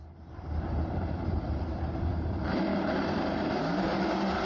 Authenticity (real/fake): fake